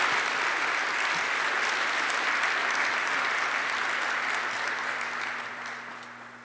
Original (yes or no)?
yes